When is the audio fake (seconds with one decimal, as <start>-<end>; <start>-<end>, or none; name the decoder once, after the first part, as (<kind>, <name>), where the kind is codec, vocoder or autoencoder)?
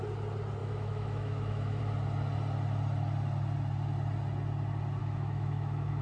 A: 0.6-1.8 (autoencoder, DAC-VAE); 5.0-6.0